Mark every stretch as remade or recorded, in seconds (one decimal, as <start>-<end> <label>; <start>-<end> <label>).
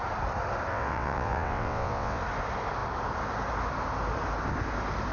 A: 0.0-0.7 recorded; 0.7-2.2 remade; 2.2-5.1 recorded